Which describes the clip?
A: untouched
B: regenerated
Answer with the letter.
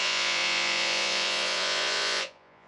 B